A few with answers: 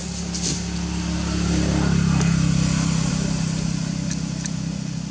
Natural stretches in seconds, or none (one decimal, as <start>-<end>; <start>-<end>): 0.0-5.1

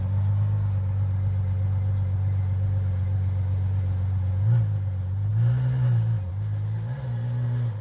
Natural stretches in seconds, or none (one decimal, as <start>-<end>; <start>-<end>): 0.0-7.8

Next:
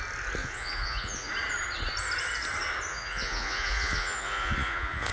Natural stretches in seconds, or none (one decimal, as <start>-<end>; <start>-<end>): 0.0-0.4; 1.3-2.9

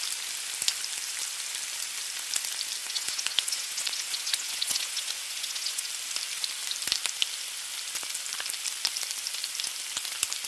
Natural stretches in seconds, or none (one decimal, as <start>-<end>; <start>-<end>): 0.0-2.8; 5.9-10.5